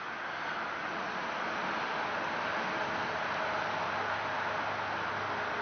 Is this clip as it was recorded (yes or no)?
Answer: yes